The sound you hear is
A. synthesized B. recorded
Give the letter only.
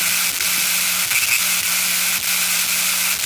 B